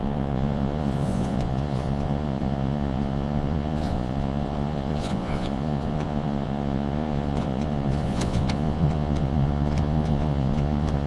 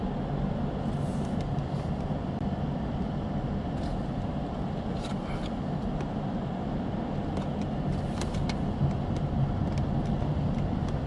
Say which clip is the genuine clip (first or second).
second